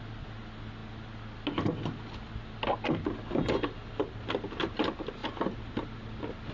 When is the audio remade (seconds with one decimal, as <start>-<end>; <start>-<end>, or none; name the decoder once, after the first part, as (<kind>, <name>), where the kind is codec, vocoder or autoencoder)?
none